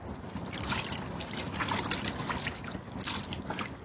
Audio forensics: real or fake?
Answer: real